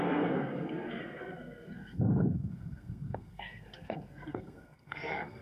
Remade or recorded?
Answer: remade